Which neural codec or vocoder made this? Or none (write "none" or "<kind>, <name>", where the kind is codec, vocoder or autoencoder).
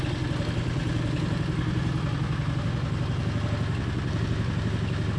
none